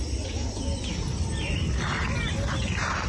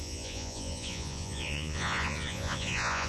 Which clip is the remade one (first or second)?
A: second